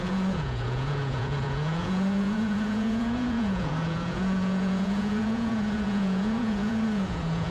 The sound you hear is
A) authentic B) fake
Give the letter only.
B